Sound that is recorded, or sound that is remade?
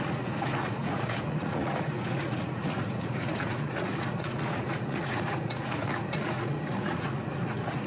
remade